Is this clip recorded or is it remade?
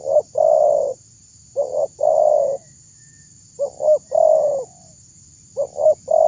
recorded